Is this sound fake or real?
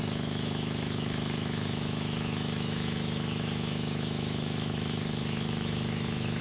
fake